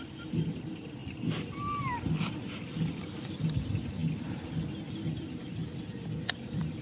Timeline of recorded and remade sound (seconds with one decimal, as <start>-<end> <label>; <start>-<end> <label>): 0.0-1.0 remade; 1.0-2.9 recorded; 2.9-4.0 remade; 4.0-4.9 recorded; 4.9-5.6 remade; 5.6-6.3 recorded; 6.3-6.8 remade